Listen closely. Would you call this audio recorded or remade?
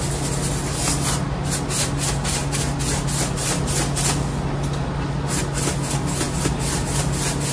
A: recorded